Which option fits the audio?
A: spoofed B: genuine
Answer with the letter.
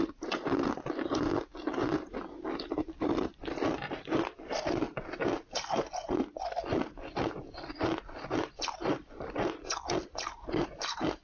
B